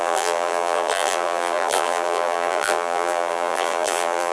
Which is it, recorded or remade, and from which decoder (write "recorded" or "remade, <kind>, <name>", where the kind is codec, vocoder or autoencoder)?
remade, vocoder, BigVGAN v2